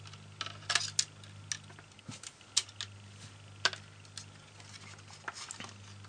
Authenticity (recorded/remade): recorded